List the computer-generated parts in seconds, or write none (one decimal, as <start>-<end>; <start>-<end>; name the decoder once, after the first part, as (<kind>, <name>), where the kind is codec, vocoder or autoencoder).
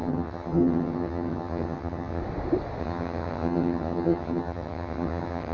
0.0-2.2 (vocoder, HiFi-GAN); 2.8-5.5